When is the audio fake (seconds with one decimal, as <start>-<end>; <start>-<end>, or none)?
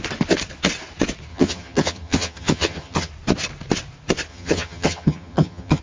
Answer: 1.3-3.1; 4.3-5.8